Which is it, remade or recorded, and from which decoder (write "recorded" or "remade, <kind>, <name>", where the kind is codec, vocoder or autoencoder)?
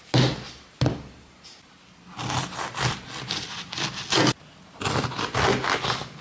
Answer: recorded